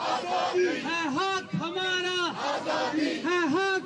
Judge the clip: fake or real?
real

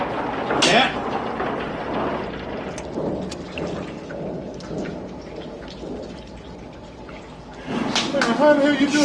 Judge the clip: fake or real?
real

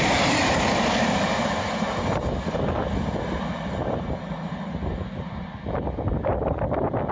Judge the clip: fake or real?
real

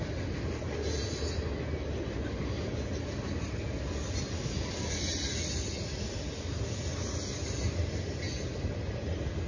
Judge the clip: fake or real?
real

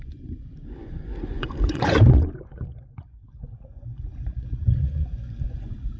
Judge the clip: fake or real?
fake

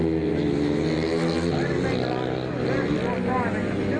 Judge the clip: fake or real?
real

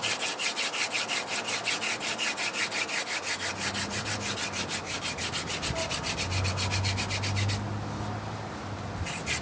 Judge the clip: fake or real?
real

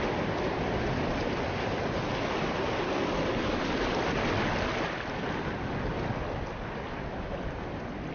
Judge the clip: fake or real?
real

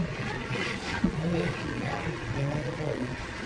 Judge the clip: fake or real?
fake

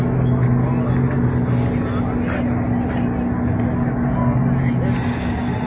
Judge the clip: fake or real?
real